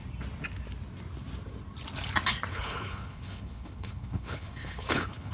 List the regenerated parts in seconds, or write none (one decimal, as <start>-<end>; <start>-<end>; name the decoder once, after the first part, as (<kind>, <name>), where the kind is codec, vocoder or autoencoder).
2.5-5.3 (codec, HILCodec)